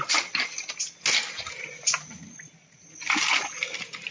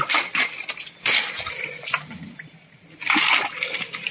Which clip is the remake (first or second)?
second